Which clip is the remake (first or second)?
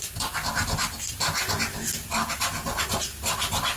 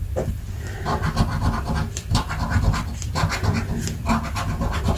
second